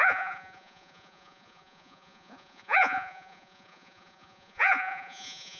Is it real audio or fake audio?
fake